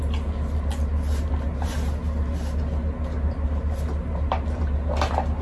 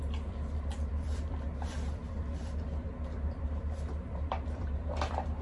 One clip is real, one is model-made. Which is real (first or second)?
first